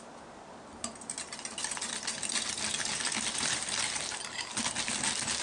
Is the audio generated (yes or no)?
no